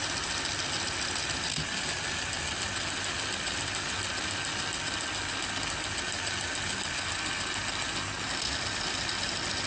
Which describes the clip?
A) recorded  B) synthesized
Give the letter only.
A